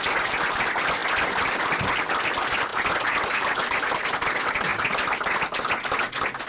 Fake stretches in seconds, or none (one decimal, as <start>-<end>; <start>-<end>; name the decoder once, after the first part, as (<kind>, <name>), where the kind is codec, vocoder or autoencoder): none